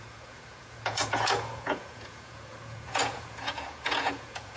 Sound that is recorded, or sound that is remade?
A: remade